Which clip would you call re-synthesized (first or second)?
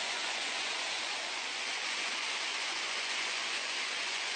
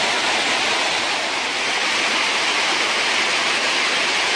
first